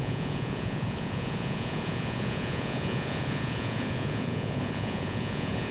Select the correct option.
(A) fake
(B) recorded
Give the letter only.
A